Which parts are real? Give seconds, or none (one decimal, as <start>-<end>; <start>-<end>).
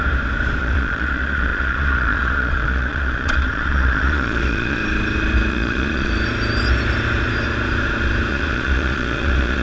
0.0-0.6; 4.8-5.5; 6.1-8.3